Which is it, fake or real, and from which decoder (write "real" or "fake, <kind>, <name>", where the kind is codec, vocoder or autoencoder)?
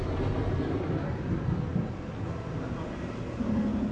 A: real